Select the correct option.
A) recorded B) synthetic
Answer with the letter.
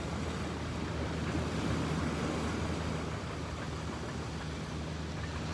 A